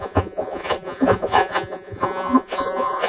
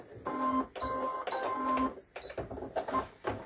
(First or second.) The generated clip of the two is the first